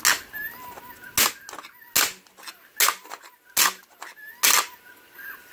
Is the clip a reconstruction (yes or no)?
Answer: no